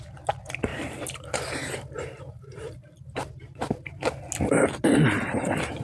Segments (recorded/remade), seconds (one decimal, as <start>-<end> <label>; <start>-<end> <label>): 0.0-0.7 recorded; 0.7-4.2 remade; 4.2-5.8 recorded